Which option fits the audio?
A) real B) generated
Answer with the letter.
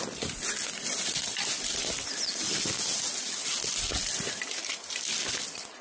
A